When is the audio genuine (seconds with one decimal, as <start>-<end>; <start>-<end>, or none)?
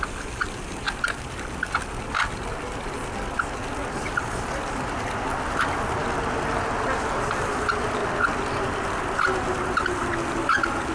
0.0-10.9